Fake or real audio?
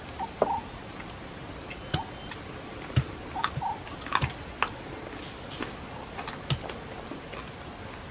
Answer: real